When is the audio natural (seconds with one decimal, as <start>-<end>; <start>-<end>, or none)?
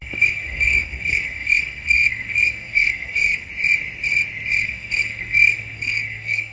3.5-4.6